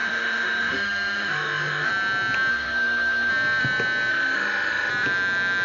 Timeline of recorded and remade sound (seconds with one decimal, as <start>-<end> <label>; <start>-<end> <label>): 0.0-1.9 remade; 1.9-2.5 recorded; 2.5-3.3 remade; 3.3-4.1 recorded; 4.1-4.9 remade; 4.9-5.6 recorded